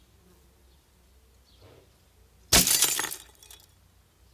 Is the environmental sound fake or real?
real